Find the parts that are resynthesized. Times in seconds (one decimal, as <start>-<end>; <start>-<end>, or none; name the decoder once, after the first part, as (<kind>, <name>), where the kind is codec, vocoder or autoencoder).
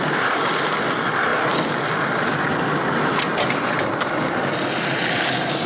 none